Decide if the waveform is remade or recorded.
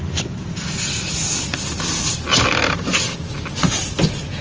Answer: recorded